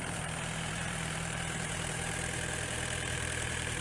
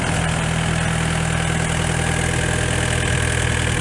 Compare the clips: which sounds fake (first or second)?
first